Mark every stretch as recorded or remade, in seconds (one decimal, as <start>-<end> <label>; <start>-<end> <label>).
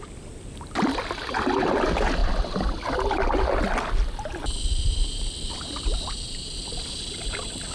0.0-7.7 recorded